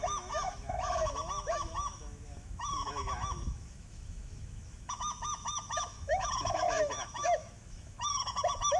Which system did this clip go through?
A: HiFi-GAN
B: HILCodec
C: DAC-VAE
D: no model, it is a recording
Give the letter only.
C